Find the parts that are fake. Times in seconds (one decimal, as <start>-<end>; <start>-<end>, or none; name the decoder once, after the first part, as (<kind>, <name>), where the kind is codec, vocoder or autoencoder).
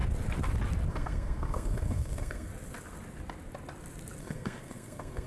0.9-2.5 (codec, SNAC); 4.2-5.3